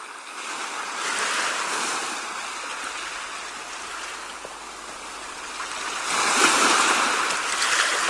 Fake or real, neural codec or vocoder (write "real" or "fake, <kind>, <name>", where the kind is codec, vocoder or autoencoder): real